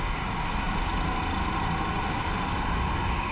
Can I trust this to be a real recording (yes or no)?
yes